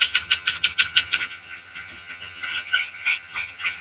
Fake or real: fake